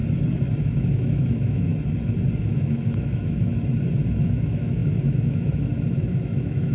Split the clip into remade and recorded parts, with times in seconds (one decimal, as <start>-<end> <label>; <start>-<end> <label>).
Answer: 0.0-0.6 recorded; 0.6-1.7 remade; 1.7-2.4 recorded; 2.4-3.5 remade; 3.5-4.2 recorded; 4.2-6.7 remade